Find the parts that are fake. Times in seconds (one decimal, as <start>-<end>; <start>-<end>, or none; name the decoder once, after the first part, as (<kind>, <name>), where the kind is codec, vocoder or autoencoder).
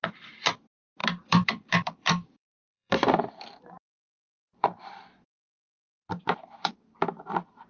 1.0-4.9 (vocoder, BigVGAN v2); 5.7-6.2